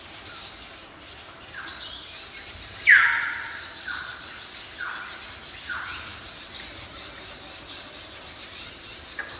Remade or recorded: recorded